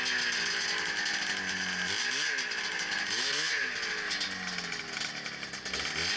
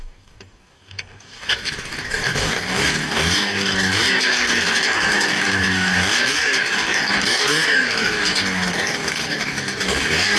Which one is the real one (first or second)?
first